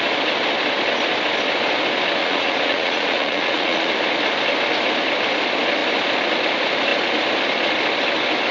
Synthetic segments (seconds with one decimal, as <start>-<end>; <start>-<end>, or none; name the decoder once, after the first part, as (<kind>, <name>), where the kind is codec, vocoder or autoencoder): 2.2-3.9 (vocoder, Vocos)